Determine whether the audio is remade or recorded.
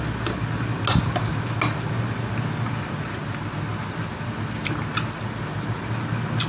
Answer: recorded